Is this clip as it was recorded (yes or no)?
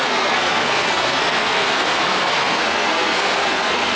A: no